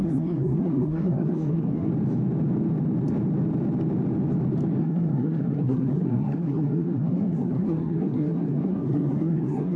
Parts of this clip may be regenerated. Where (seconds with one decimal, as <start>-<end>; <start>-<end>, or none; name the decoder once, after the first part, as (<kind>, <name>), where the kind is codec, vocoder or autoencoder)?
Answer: 0.0-1.9 (codec, SNAC); 4.8-9.8